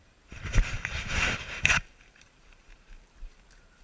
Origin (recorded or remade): remade